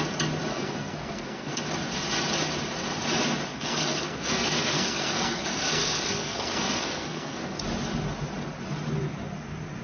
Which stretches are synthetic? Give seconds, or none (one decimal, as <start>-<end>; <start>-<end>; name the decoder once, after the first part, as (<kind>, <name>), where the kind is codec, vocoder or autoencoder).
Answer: 0.5-1.6 (codec, SNAC); 3.5-7.6